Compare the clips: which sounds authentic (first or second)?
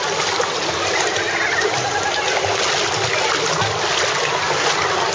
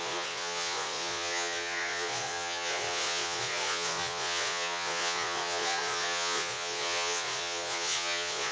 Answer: first